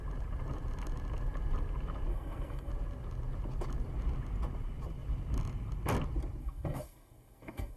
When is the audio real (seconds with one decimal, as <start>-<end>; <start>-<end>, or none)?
0.0-2.1; 2.7-6.4